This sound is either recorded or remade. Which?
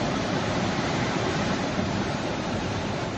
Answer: remade